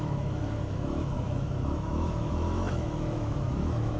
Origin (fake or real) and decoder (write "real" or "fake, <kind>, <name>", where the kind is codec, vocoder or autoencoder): fake, autoencoder, DAC-VAE